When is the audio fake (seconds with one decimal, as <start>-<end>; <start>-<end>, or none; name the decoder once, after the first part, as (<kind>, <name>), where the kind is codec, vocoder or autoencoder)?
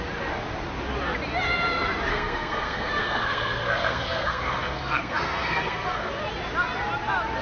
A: 2.1-6.1 (codec, SNAC)